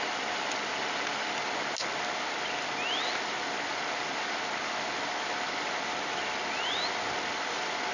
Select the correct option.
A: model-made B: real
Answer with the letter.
B